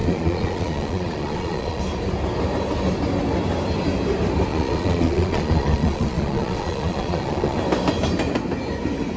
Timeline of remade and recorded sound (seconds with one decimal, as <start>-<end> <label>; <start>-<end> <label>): 0.0-1.8 remade; 1.8-4.5 recorded; 4.5-7.6 remade; 7.6-9.2 recorded